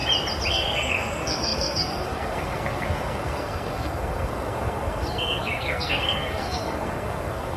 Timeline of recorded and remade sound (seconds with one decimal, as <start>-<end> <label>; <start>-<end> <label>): 0.0-0.5 recorded; 0.5-7.6 remade